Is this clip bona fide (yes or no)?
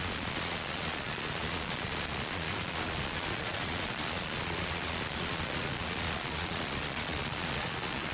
no